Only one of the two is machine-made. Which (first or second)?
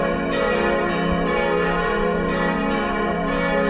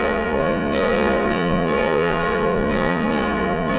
second